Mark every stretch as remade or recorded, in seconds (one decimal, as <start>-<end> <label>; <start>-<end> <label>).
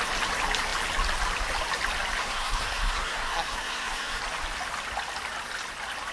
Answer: 0.0-2.2 recorded; 2.2-4.2 remade; 4.2-6.1 recorded